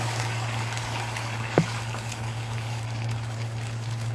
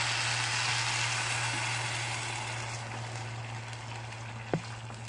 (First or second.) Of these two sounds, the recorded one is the second